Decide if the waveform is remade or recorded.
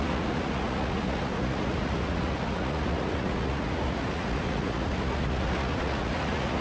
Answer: remade